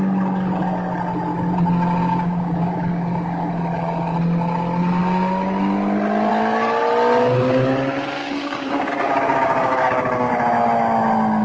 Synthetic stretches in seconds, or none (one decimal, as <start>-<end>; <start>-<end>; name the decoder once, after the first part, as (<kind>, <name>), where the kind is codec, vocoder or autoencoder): 2.0-3.5 (codec, DAC); 8.2-10.3